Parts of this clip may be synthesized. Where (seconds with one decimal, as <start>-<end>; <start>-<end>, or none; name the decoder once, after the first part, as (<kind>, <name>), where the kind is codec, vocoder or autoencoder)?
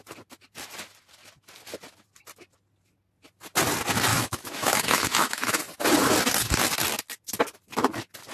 4.1-5.6 (autoencoder, DAC-VAE)